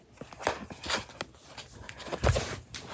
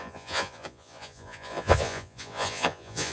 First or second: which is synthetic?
second